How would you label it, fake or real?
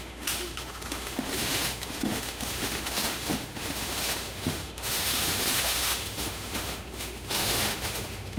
fake